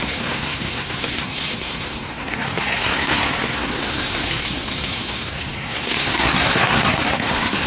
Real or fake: fake